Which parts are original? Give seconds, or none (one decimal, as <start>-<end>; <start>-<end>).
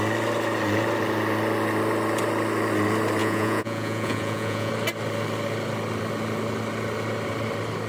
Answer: 0.0-3.2; 4.7-7.9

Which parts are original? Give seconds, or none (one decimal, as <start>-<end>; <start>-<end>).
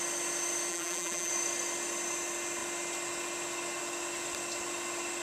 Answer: 0.0-0.7; 1.3-5.2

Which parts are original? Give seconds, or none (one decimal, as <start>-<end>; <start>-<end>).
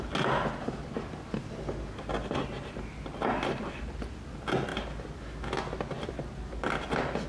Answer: 0.0-7.3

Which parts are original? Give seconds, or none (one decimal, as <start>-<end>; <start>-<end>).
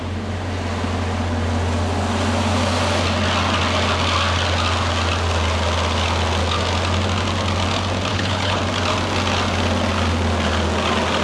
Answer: 0.0-8.1; 8.6-11.2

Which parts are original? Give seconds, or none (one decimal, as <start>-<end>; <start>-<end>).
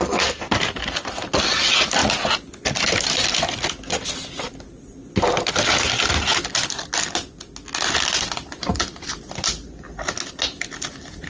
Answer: 0.0-11.3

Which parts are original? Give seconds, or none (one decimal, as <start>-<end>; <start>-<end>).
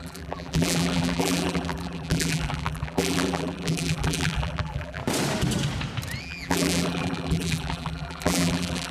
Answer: 5.0-6.2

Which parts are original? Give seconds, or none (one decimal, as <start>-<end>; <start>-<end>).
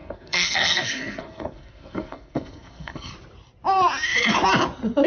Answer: 3.1-5.1